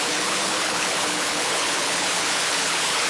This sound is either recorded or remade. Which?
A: remade